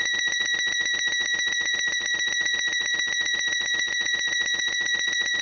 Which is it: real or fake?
fake